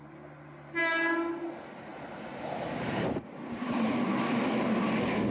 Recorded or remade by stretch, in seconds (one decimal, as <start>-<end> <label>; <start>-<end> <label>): 0.0-5.3 recorded